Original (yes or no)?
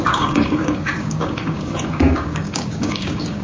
no